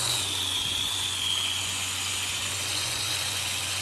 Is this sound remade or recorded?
remade